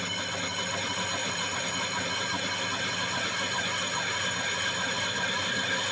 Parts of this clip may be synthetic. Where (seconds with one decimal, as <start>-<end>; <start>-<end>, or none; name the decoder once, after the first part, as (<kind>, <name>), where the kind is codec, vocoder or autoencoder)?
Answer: 1.2-2.1 (vocoder, BigVGAN v2); 3.9-4.9